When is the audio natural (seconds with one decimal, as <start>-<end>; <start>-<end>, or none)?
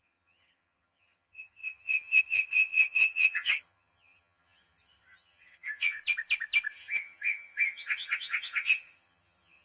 6.0-6.7